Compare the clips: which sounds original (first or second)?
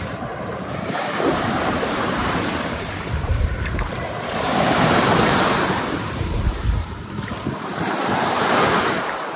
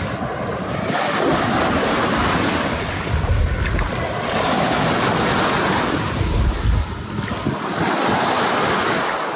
second